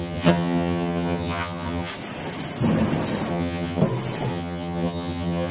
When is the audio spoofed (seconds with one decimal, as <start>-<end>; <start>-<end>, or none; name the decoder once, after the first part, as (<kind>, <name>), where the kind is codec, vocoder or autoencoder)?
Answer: 0.0-1.9 (vocoder, HiFi-GAN); 3.3-3.8; 4.3-5.5